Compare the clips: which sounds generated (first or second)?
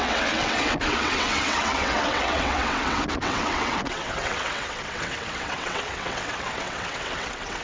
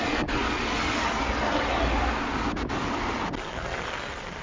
first